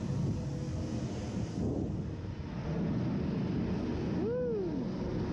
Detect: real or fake real